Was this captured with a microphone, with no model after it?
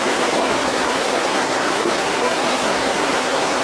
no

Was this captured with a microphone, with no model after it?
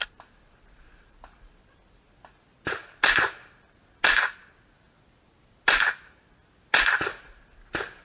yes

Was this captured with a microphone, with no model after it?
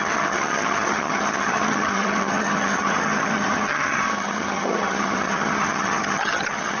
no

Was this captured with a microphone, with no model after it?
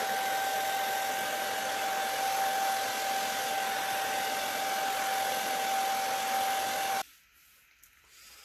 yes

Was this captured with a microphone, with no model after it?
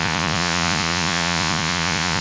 no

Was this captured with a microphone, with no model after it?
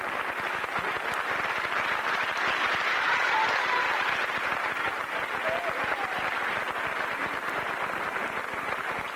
no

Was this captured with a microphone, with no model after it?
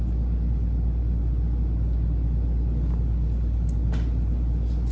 yes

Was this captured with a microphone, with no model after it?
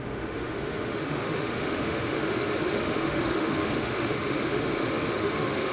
no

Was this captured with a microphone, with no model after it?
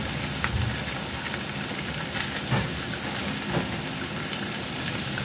yes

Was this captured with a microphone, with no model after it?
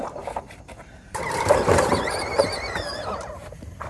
no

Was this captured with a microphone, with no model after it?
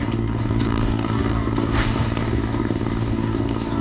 no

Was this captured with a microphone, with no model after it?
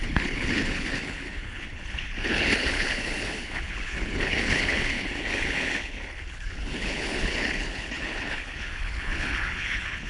no